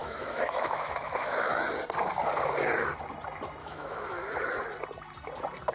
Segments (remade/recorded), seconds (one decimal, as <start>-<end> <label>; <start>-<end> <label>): 0.0-1.5 remade; 1.5-3.6 recorded; 3.6-4.6 remade; 4.6-5.7 recorded